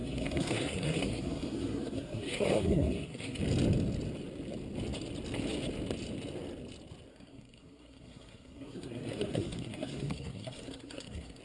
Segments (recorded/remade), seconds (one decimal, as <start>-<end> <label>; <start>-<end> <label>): 0.0-3.4 remade; 3.4-7.1 recorded; 7.1-11.4 remade